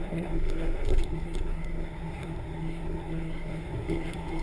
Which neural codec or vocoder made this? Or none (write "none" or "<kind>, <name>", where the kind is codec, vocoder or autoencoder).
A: codec, SNAC